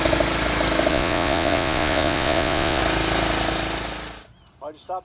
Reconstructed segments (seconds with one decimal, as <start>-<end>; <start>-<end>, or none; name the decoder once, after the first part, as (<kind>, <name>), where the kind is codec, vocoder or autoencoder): 0.9-2.8 (vocoder, Vocos)